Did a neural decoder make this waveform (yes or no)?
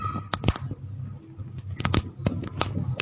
no